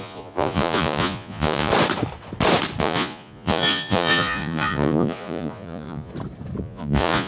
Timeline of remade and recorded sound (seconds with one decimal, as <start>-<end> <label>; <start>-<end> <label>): 0.0-1.7 remade; 1.7-2.8 recorded; 2.8-6.1 remade; 6.1-6.6 recorded; 6.6-7.3 remade